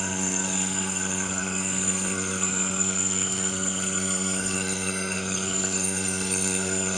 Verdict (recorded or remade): remade